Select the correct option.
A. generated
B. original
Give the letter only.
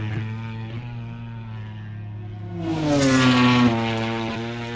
B